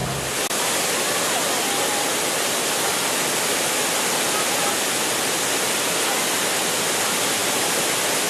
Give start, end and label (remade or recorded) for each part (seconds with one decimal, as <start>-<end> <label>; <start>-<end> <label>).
0.0-8.3 recorded

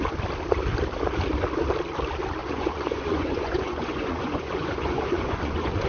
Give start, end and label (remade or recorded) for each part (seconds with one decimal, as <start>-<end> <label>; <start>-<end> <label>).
0.0-2.4 recorded; 2.4-5.9 remade

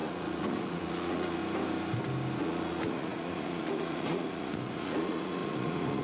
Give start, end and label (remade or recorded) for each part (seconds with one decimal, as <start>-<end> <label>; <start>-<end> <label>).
0.0-1.4 remade; 1.4-2.4 recorded; 2.4-6.0 remade